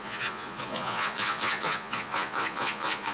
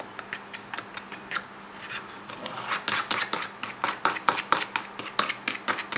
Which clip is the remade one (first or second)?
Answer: first